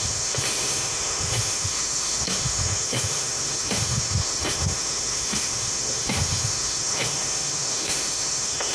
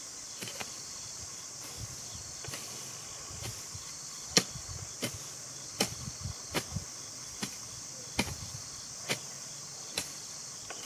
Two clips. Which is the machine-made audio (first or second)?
first